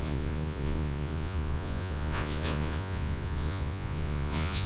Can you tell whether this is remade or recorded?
remade